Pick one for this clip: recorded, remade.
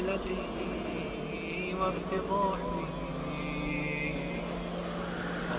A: recorded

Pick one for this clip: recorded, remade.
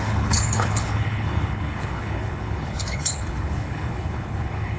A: remade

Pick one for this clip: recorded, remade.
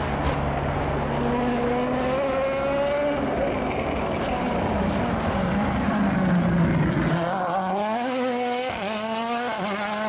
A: recorded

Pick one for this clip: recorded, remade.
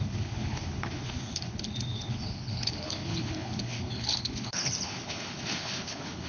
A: remade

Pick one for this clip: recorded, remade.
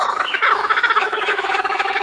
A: remade